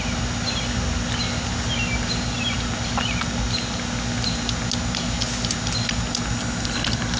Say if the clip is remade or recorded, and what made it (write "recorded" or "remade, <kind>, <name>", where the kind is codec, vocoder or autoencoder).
recorded